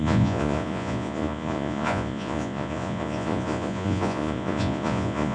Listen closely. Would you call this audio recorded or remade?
remade